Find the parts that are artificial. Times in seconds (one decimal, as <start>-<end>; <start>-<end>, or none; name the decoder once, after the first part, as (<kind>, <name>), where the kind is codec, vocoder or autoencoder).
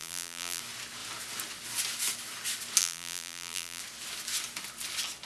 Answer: 0.0-0.6 (vocoder, BigVGAN v2); 2.8-3.8